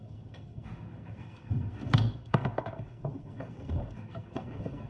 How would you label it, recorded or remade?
remade